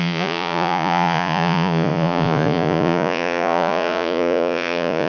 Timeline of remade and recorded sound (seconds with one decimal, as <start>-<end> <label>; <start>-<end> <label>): 0.0-5.1 remade